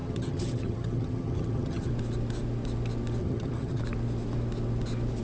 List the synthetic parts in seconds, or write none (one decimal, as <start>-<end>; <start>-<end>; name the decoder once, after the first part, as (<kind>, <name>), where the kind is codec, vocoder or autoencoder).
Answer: 0.0-1.9 (vocoder, HiFi-GAN); 3.2-3.8